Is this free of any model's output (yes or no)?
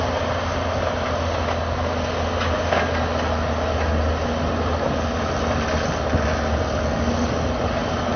yes